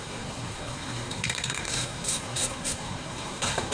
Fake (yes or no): yes